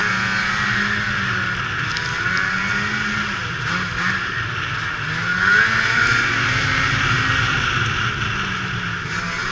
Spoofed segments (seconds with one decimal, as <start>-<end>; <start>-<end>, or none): none